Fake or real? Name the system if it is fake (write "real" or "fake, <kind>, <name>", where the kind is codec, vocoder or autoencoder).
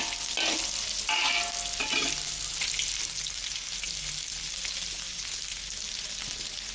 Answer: real